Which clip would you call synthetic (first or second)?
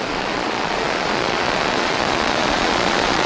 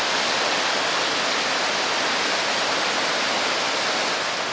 first